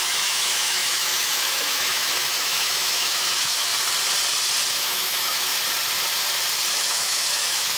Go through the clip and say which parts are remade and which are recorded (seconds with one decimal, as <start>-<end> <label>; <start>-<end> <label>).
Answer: 0.0-3.7 remade; 3.7-4.7 recorded; 4.7-5.5 remade; 5.5-6.7 recorded; 6.7-7.8 remade